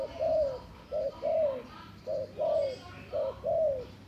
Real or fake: real